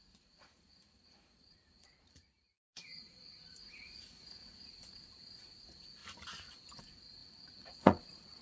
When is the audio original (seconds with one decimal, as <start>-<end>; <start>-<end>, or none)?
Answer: 6.0-6.8